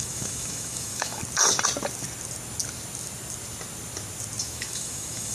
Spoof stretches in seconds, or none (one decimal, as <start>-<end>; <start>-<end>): 0.0-1.2; 4.4-5.3